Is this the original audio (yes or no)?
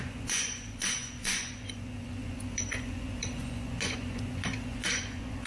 no